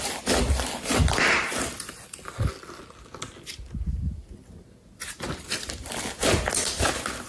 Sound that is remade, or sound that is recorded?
recorded